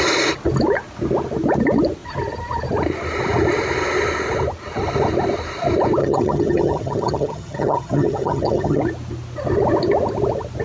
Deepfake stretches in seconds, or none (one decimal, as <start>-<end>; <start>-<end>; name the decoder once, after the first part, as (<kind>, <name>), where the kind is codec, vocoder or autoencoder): 6.0-8.8 (vocoder, HiFi-GAN)